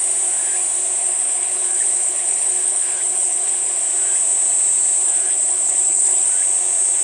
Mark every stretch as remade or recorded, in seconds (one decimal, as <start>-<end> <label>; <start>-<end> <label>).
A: 0.0-1.0 recorded; 1.0-3.8 remade; 3.8-5.0 recorded; 5.0-6.3 remade; 6.3-7.0 recorded